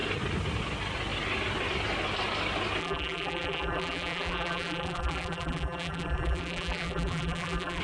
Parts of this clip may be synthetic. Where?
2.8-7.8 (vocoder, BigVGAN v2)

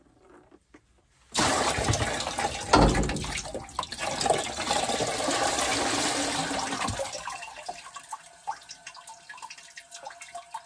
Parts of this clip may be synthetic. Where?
5.7-6.5 (vocoder, BigVGAN v2)

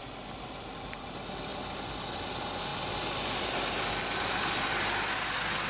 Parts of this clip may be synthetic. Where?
none

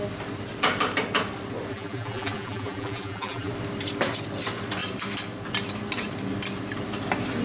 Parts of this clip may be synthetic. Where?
1.7-3.5 (vocoder, BigVGAN v2)

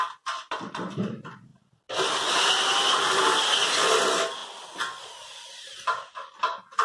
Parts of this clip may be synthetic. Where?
1.5-4.0 (vocoder, BigVGAN v2)

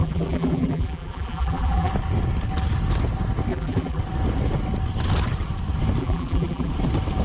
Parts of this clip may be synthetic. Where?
0.0-1.9 (vocoder, BigVGAN v2); 3.5-4.0; 6.0-6.7

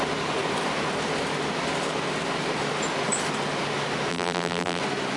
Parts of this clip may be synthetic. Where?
4.1-4.8 (vocoder, BigVGAN v2)